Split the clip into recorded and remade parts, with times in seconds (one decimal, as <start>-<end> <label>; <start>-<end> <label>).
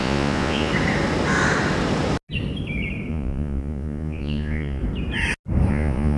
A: 0.0-0.7 remade; 0.7-3.1 recorded; 3.1-4.8 remade; 4.8-5.7 recorded; 5.7-6.2 remade